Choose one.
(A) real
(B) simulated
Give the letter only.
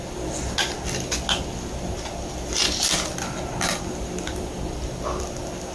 A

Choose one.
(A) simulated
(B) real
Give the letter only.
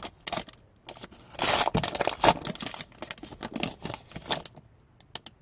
B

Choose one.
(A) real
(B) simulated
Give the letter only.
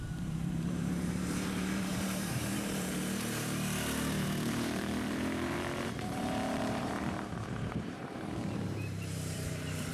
B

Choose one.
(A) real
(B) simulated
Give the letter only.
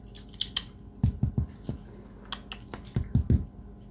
A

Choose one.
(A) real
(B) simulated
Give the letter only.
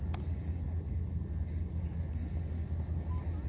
A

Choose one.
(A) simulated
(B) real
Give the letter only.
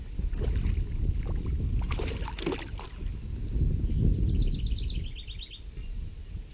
B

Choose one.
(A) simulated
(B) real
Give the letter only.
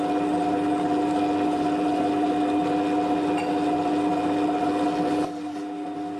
B